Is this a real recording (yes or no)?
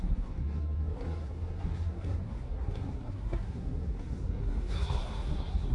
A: no